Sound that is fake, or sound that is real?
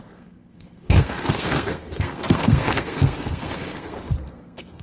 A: fake